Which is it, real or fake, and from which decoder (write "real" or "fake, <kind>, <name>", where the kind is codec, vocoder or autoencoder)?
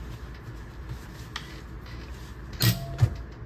real